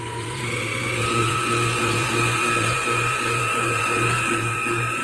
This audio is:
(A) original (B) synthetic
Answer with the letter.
B